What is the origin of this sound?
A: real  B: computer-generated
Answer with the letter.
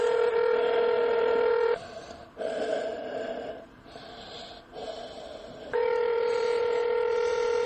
B